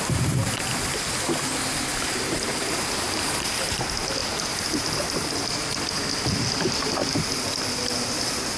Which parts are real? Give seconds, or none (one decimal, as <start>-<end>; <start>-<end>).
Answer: 0.0-8.6